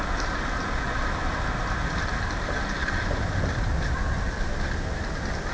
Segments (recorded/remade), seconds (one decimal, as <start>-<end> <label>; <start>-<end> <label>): 0.0-5.5 recorded